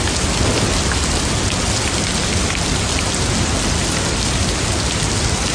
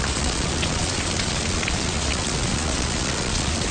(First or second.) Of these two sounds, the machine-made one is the second